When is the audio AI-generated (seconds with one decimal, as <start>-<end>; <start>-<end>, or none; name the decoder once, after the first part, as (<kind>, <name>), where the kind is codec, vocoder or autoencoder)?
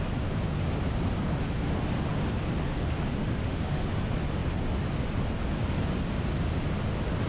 3.2-4.0 (autoencoder, DAC-VAE)